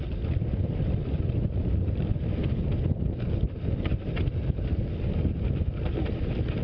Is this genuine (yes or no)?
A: yes